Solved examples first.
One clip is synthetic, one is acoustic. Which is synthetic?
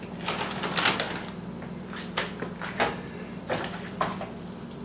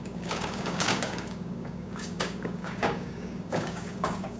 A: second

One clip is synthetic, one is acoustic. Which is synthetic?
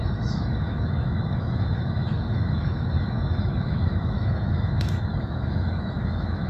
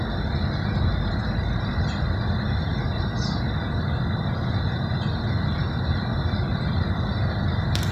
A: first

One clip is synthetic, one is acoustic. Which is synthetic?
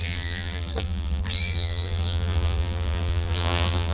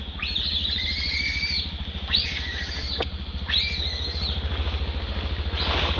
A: first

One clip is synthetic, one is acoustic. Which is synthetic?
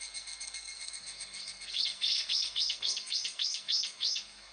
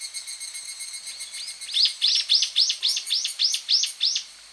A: first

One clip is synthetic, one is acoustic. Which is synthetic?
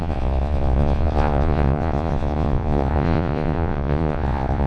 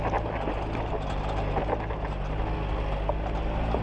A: first